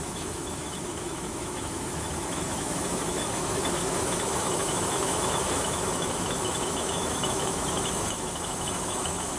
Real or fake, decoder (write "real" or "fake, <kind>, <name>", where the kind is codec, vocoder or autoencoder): fake, autoencoder, DAC-VAE